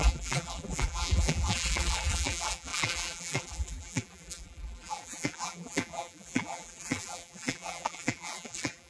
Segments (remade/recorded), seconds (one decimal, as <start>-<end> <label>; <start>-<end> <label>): 0.0-8.9 remade